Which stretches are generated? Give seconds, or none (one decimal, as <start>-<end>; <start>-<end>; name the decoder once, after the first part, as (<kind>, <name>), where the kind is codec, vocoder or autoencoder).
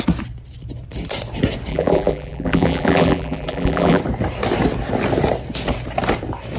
1.7-4.0 (vocoder, BigVGAN v2)